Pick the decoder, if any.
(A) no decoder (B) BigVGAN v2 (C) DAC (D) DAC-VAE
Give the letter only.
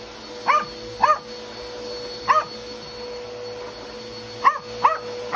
A